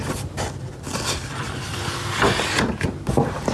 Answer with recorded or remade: recorded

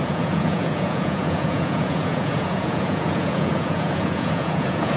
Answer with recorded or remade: remade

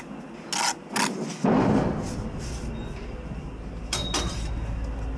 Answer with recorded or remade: recorded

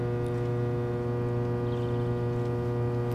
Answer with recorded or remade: recorded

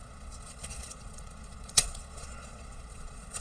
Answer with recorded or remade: remade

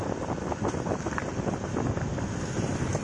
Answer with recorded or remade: recorded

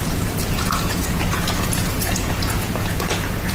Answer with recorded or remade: remade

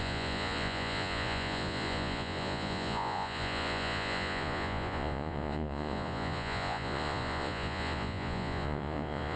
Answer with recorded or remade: remade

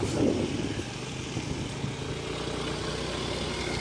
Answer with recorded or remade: recorded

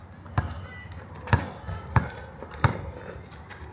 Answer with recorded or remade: recorded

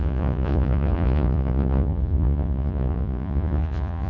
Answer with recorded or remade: remade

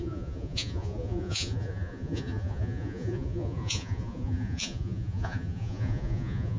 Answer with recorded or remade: remade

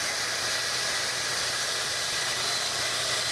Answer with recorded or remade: recorded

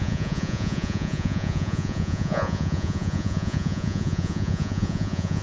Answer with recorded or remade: remade